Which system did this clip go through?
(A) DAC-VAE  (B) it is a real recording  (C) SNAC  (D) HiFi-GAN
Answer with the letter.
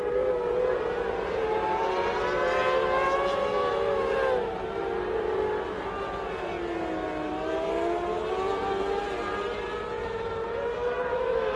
B